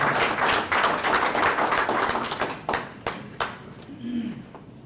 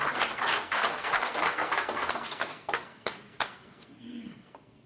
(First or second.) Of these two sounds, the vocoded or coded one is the second